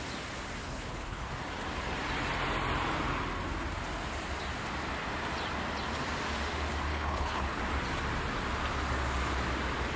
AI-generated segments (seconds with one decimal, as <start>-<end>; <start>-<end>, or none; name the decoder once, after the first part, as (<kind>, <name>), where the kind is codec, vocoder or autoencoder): 0.6-1.3 (codec, HILCodec); 6.9-7.6